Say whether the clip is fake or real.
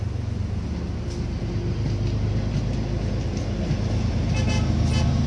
real